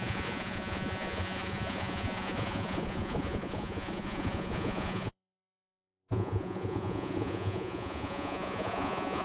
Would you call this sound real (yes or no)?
no